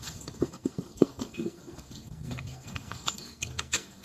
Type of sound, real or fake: fake